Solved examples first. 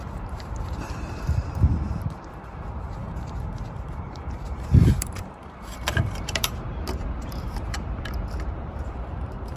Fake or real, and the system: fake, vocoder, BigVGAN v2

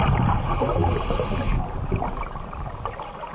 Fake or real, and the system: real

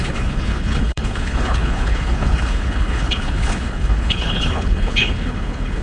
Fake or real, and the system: fake, codec, HILCodec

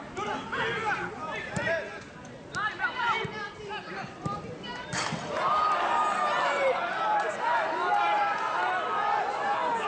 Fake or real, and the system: real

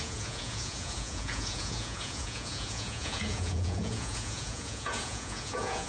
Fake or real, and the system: fake, vocoder, Vocos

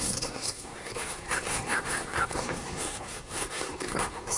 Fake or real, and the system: fake, codec, SNAC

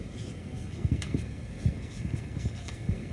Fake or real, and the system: fake, codec, SNAC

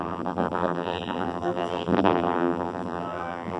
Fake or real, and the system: fake, vocoder, BigVGAN v2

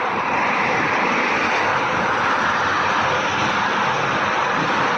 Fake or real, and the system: fake, vocoder, BigVGAN v2